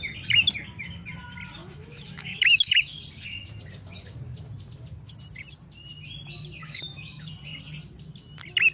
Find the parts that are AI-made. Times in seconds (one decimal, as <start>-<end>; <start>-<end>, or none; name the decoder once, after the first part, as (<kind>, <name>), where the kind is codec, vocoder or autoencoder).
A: 1.6-3.0 (autoencoder, DAC-VAE); 6.6-7.2